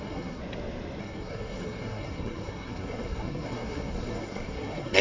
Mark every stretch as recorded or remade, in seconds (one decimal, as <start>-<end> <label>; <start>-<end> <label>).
0.0-0.4 remade; 0.4-1.0 recorded; 1.0-5.0 remade